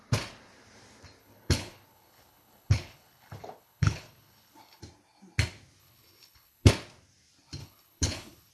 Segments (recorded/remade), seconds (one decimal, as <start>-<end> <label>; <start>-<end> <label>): 0.0-1.2 recorded; 1.2-4.8 remade; 4.8-5.8 recorded; 5.8-6.7 remade; 6.7-7.6 recorded; 7.6-8.5 remade